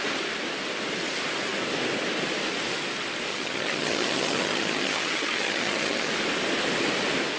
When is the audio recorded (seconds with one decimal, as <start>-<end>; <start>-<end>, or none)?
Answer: 0.0-3.3; 6.1-7.4